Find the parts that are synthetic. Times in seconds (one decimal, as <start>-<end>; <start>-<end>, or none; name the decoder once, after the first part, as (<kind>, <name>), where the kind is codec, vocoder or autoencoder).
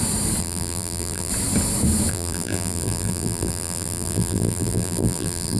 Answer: 0.4-1.3 (vocoder, BigVGAN v2); 2.1-5.6